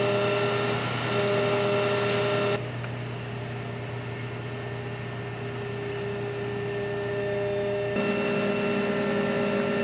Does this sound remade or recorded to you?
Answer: recorded